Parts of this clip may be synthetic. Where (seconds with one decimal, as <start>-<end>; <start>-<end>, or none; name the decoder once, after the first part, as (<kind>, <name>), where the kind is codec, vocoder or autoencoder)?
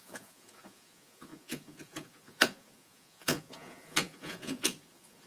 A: 0.0-5.3 (vocoder, Vocos)